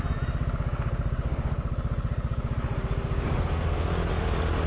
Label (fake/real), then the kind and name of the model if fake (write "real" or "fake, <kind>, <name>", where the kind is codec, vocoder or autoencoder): real